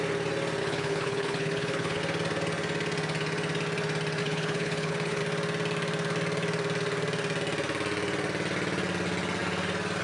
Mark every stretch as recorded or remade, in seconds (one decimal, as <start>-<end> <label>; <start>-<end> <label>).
0.0-0.6 recorded; 0.6-2.0 remade; 2.0-4.2 recorded; 4.2-5.2 remade; 5.2-10.0 recorded